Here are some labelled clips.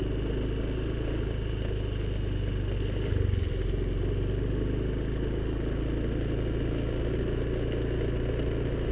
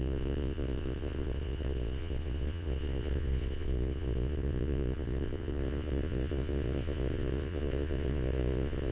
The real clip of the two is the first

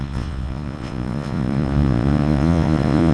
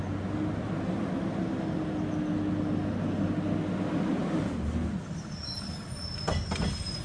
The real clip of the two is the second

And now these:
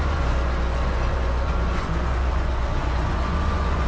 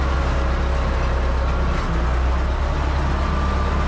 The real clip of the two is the second